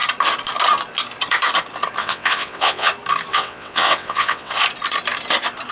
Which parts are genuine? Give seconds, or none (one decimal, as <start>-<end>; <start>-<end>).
0.0-2.0; 2.9-3.3; 4.5-5.7